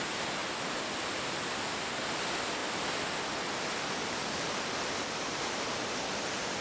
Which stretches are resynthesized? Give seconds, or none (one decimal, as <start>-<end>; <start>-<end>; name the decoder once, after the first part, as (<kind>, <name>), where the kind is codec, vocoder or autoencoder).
none